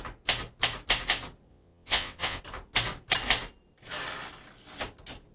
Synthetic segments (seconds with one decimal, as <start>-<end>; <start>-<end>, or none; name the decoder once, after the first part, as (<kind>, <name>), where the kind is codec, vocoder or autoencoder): 1.5-2.4 (vocoder, WaveNeXt)